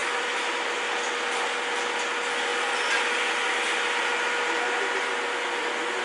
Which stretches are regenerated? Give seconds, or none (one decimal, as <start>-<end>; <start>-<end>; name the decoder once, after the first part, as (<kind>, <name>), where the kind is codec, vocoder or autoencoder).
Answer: none